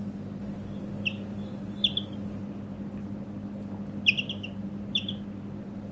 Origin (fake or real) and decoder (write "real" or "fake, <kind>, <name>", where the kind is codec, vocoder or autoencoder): real